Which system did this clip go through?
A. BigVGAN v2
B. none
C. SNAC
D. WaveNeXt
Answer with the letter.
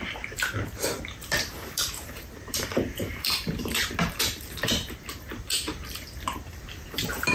A